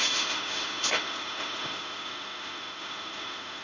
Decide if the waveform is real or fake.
fake